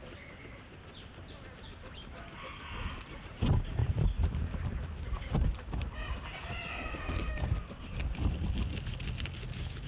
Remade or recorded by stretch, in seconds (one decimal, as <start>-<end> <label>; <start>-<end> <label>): 0.0-6.7 recorded; 6.7-7.3 remade; 7.3-9.9 recorded